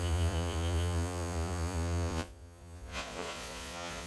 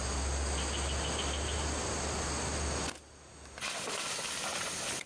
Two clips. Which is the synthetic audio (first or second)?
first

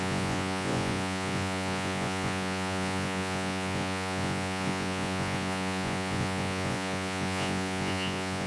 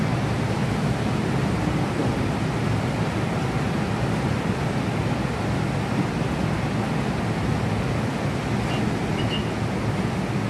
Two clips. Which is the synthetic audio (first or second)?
first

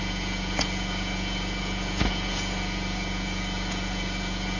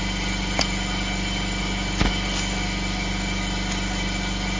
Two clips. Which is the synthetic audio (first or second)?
first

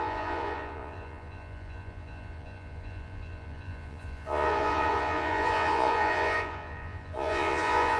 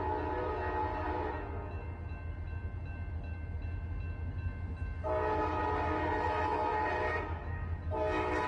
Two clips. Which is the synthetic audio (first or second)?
first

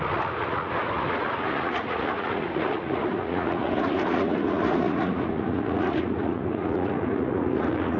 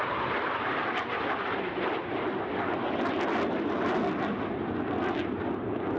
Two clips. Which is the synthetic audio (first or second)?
first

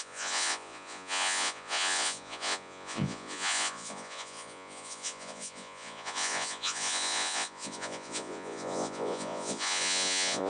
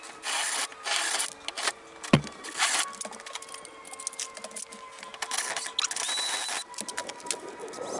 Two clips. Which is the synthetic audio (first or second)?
first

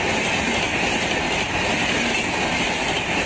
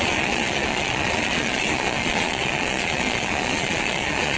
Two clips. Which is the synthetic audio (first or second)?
second